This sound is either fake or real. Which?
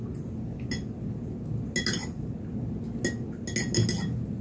real